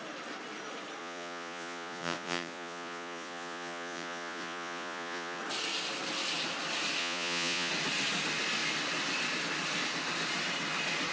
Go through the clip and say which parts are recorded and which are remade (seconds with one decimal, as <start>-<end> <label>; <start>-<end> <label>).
0.0-1.0 recorded; 1.0-5.4 remade; 5.4-7.0 recorded; 7.0-7.7 remade; 7.7-11.1 recorded